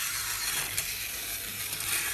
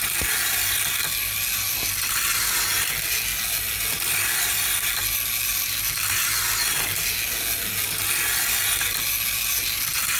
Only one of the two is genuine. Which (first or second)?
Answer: second